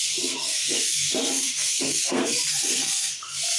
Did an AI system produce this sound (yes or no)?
yes